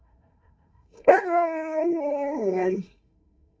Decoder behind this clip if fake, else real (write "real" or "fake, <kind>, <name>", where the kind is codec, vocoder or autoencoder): fake, codec, SNAC